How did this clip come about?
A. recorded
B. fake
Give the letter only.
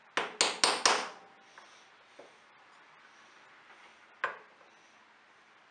A